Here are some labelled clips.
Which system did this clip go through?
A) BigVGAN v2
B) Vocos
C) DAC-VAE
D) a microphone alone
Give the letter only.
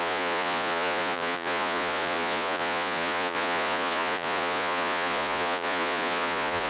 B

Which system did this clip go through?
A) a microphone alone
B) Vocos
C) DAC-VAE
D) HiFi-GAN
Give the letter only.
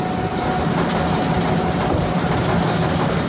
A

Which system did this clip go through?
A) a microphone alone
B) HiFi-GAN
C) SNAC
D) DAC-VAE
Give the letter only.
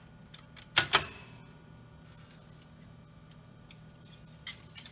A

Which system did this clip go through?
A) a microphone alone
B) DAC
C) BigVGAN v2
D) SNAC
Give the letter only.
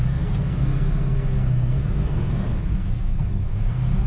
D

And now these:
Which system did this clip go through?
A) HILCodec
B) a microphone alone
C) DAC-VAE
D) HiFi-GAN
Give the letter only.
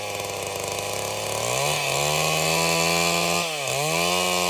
B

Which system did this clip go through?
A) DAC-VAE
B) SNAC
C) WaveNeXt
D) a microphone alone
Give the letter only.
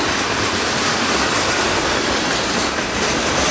D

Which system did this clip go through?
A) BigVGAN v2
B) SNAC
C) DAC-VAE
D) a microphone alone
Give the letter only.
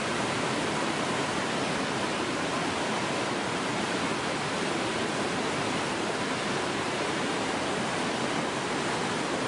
A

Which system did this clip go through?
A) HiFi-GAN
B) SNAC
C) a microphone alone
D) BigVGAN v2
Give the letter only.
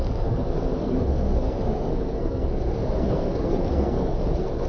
B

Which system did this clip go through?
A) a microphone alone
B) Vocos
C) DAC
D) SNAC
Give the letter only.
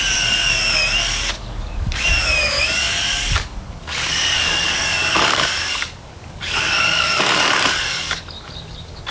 C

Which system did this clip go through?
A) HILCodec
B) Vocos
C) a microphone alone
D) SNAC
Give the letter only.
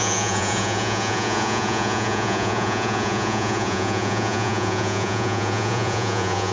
B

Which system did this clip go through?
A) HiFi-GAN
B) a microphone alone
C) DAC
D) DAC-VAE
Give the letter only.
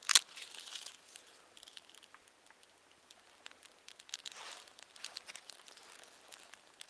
B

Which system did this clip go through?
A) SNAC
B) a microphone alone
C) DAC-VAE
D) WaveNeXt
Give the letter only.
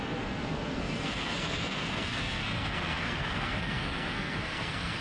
A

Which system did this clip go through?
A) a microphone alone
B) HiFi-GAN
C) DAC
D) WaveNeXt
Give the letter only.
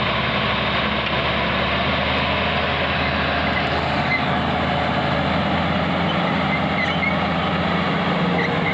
A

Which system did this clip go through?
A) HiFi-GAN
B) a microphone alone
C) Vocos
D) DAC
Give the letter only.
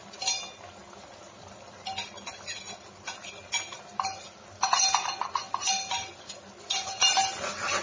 B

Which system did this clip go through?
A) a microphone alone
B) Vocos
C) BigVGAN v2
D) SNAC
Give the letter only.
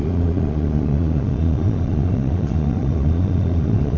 B